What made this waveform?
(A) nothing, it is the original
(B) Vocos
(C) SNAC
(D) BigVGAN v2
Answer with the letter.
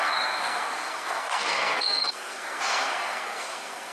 C